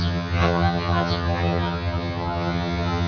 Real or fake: fake